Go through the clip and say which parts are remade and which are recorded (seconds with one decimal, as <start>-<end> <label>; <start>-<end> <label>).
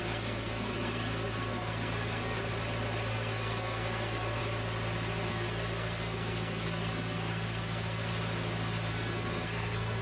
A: 0.0-2.5 remade; 2.5-3.1 recorded; 3.1-4.4 remade; 4.4-5.3 recorded; 5.3-8.1 remade; 8.1-8.9 recorded; 8.9-10.0 remade